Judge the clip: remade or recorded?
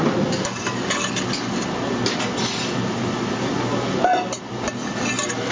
recorded